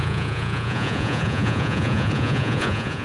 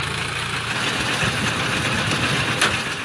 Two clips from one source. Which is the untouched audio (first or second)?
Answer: second